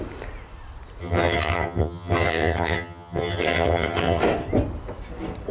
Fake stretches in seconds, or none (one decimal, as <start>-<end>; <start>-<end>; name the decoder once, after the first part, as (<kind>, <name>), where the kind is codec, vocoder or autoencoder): 1.0-4.2 (vocoder, HiFi-GAN)